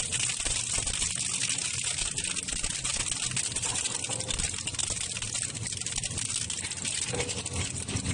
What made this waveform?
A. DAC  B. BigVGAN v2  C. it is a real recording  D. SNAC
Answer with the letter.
C